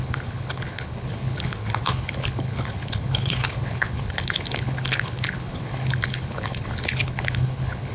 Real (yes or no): no